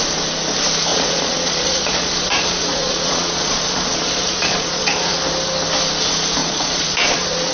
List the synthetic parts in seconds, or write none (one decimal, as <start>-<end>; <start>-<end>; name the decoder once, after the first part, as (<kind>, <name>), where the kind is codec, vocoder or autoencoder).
0.9-5.2 (vocoder, Vocos); 6.4-7.5